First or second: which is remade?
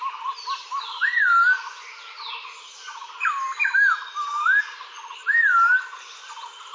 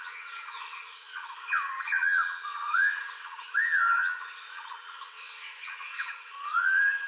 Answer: second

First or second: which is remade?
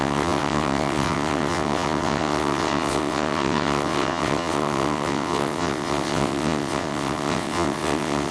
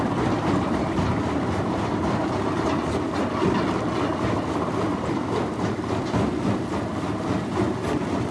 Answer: first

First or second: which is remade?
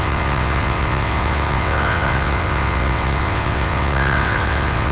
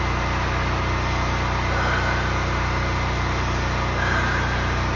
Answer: first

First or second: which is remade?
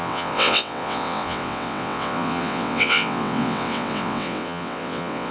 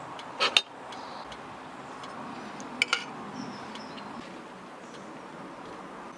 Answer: first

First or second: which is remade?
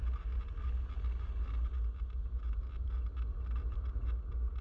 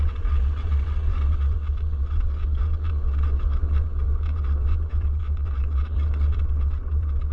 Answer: second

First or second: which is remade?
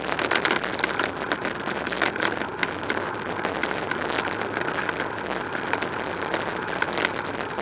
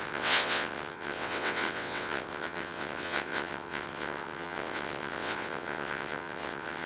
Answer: second